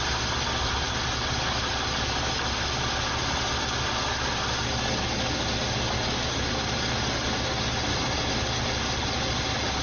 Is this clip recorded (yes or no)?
yes